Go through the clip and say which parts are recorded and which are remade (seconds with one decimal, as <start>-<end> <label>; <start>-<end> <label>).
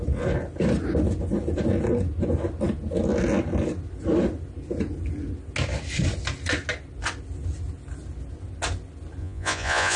0.0-9.2 recorded; 9.2-10.0 remade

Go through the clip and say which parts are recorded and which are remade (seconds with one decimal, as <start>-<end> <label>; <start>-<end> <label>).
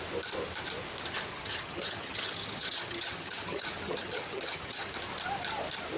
0.0-1.3 recorded; 1.3-4.9 remade; 4.9-6.0 recorded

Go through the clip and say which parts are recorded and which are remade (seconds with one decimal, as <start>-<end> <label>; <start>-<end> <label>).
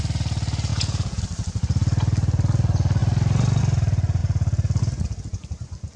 0.0-0.7 recorded; 0.7-1.2 remade; 1.2-6.0 recorded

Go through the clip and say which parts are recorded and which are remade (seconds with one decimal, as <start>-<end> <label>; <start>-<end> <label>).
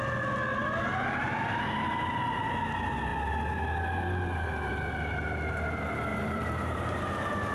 0.0-0.9 recorded; 0.9-1.6 remade; 1.6-6.1 recorded; 6.1-7.0 remade; 7.0-7.5 recorded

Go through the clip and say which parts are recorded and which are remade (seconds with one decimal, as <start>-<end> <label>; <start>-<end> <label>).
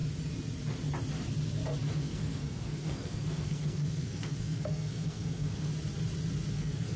0.0-1.9 recorded; 1.9-5.7 remade; 5.7-6.5 recorded; 6.5-7.0 remade